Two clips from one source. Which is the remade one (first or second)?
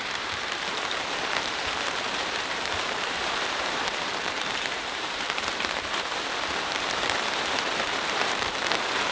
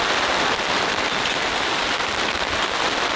first